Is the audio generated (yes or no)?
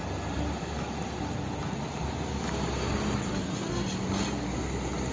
no